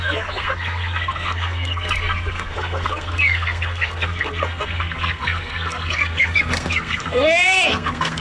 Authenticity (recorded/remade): remade